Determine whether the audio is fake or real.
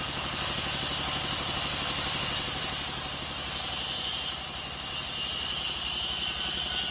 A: real